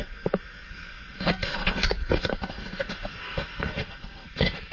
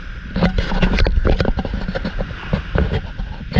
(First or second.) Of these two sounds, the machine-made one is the first